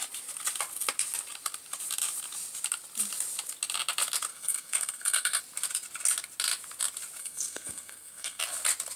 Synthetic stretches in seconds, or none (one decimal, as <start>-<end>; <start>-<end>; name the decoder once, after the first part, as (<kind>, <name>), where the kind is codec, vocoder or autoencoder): 4.3-5.4 (codec, SNAC); 7.2-8.4